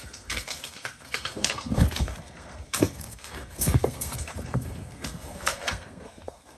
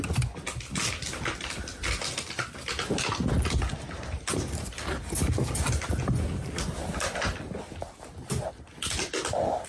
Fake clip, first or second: first